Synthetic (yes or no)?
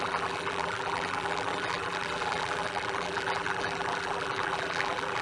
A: yes